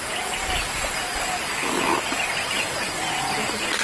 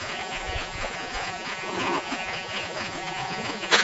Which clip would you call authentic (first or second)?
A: first